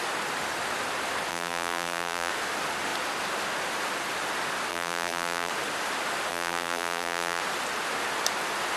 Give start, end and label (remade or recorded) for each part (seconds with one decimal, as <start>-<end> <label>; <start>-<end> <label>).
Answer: 0.0-1.3 recorded; 1.3-2.3 remade; 2.3-4.7 recorded; 4.7-5.5 remade; 5.5-6.3 recorded; 6.3-7.4 remade; 7.4-8.8 recorded